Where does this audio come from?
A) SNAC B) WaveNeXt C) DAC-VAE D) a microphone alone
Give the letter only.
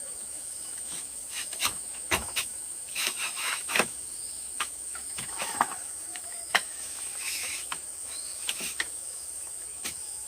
C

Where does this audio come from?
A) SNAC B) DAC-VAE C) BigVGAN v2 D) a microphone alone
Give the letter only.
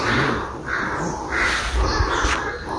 D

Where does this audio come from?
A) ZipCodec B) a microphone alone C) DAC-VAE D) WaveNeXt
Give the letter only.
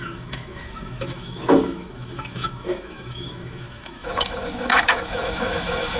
C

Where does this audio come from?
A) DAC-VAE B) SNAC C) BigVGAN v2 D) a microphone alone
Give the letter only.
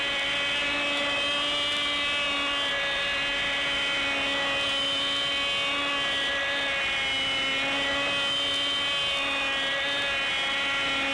D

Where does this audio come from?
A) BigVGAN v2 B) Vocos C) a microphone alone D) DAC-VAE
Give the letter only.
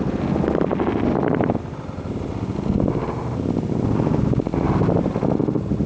C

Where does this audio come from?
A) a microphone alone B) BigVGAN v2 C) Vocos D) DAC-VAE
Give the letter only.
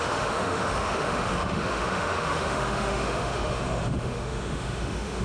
D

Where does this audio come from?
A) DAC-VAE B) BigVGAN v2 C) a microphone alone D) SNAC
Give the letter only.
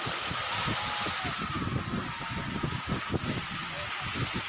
C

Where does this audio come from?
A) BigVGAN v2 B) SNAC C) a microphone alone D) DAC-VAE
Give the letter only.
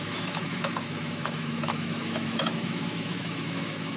D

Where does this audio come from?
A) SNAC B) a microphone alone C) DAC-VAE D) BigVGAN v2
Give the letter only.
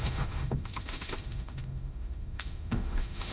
C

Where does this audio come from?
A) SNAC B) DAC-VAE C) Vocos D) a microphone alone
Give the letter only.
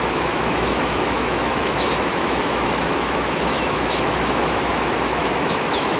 B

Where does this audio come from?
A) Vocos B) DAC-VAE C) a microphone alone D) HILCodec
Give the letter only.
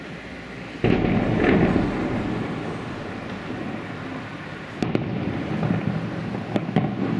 C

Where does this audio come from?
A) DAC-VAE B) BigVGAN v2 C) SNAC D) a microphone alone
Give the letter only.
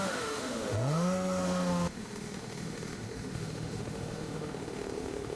A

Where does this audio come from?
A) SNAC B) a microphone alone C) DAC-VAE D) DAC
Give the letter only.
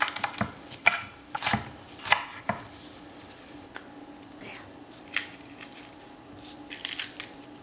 B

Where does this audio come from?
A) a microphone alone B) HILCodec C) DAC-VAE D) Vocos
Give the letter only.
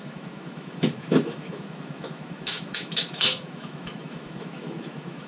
C